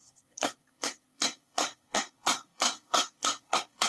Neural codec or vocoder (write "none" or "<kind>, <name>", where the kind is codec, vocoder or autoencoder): codec, SNAC